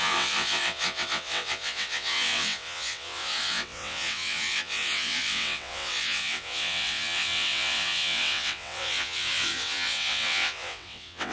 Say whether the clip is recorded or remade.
remade